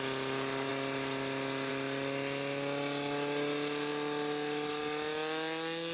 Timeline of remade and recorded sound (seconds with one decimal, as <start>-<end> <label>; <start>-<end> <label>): 0.0-5.9 recorded